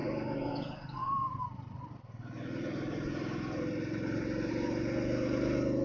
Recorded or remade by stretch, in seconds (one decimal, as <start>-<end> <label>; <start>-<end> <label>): 0.0-5.8 recorded